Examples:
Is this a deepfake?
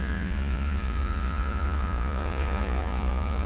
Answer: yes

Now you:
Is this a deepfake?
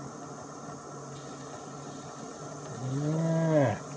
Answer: no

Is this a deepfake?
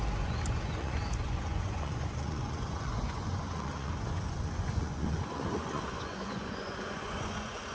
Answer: yes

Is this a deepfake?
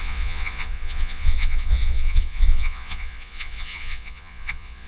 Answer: yes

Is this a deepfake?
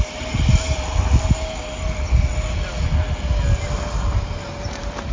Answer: no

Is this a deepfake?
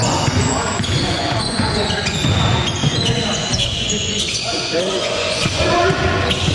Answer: yes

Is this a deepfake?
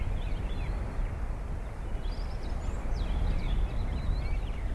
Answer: no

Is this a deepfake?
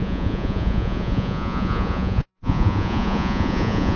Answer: yes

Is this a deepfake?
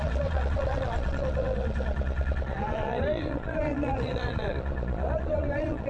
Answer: yes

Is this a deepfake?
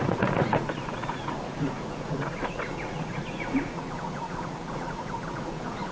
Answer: yes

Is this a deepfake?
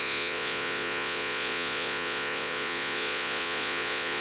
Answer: yes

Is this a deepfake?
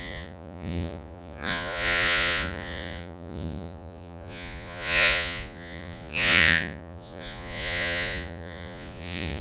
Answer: yes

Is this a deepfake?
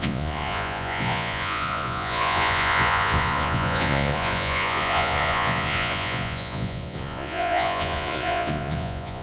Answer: yes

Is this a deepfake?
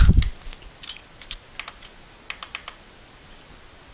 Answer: no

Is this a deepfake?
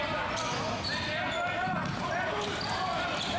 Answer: no